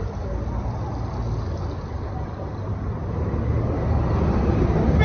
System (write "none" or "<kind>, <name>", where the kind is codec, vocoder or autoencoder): none